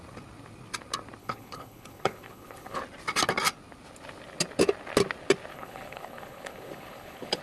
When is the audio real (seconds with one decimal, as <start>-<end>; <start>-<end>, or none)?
0.0-1.2; 2.8-5.5